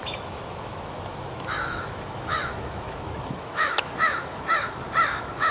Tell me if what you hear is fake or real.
fake